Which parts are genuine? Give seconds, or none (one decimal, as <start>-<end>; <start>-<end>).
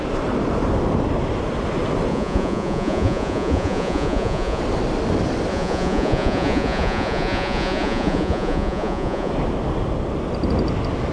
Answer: 0.0-2.1; 4.6-5.5; 9.3-11.1